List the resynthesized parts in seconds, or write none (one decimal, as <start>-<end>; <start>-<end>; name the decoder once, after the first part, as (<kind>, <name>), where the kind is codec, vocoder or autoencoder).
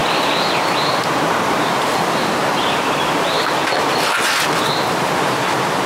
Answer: 1.6-3.6 (vocoder, BigVGAN v2); 4.9-5.9